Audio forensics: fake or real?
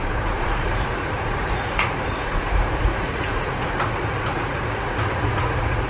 fake